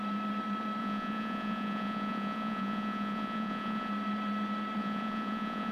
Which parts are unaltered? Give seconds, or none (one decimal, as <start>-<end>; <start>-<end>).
0.0-0.8; 3.9-4.8